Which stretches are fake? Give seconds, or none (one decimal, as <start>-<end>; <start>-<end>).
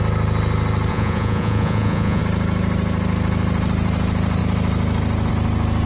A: 0.9-2.2